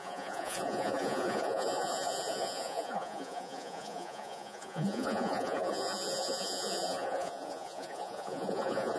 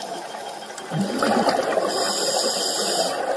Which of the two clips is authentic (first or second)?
second